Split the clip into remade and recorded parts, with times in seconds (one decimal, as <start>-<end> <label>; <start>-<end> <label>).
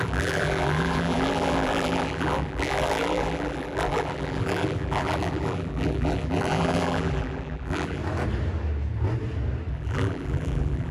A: 0.0-8.0 remade; 8.0-9.7 recorded; 9.7-10.9 remade